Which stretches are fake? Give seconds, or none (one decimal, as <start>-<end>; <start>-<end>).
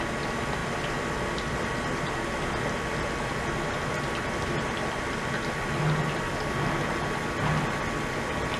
none